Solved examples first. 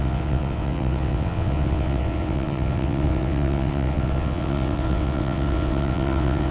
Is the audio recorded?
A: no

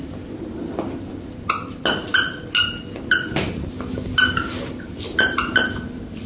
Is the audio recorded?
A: yes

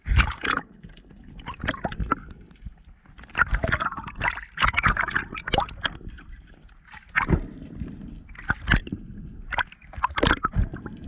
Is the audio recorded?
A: yes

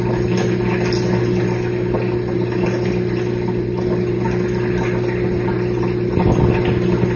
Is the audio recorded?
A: yes